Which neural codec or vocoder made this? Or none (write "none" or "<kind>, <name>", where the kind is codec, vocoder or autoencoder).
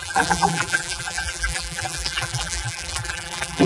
vocoder, BigVGAN v2